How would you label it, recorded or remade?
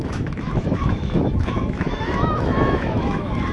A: remade